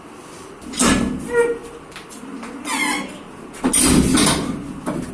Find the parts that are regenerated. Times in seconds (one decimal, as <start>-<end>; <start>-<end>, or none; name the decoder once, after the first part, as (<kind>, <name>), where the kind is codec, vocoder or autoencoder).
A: none